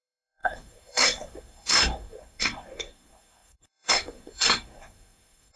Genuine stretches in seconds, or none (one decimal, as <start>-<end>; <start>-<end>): none